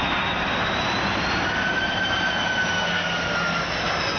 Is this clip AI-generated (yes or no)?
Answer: no